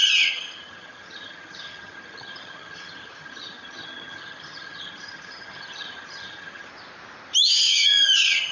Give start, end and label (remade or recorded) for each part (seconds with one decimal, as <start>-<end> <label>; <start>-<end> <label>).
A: 0.0-6.7 remade; 6.7-7.7 recorded; 7.7-8.5 remade